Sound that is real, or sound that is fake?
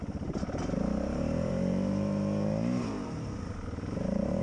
fake